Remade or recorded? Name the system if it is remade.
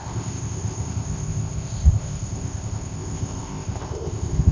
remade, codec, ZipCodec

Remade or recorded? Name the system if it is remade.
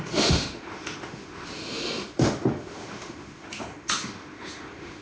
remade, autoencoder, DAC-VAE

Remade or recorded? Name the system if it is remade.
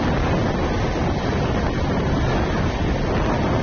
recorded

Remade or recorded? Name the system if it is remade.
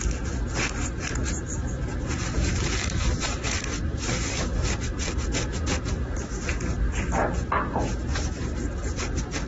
recorded